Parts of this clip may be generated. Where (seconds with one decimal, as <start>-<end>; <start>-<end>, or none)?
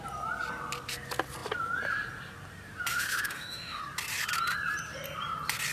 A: 2.9-3.8